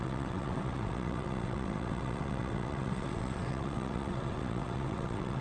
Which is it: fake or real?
fake